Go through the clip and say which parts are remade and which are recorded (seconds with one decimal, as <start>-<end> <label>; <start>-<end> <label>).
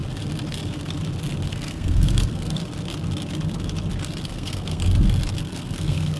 0.0-1.5 recorded; 1.5-2.6 remade; 2.6-4.3 recorded; 4.3-4.8 remade; 4.8-5.4 recorded; 5.4-6.2 remade